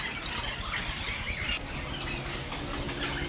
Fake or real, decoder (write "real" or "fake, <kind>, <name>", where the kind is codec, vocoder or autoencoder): real